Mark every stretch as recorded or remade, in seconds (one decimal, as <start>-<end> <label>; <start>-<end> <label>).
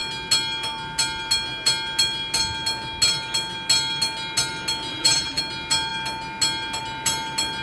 0.0-4.9 recorded; 4.9-5.4 remade; 5.4-7.6 recorded